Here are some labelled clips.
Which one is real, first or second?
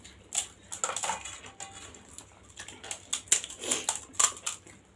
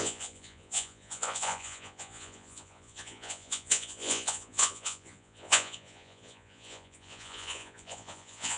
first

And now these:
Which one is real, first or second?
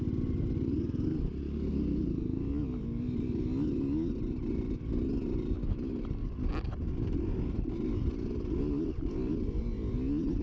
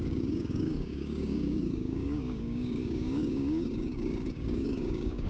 first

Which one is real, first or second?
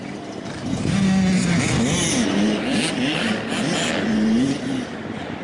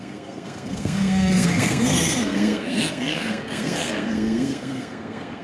first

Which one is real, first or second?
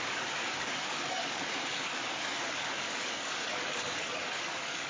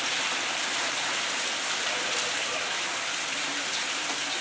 second